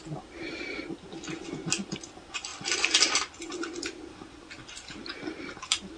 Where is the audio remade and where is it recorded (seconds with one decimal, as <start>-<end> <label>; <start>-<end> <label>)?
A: 0.0-6.0 recorded